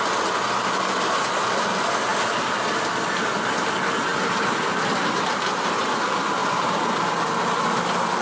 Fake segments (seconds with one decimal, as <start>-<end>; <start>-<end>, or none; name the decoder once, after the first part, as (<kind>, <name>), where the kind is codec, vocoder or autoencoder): 4.1-5.3 (vocoder, BigVGAN v2); 6.4-7.3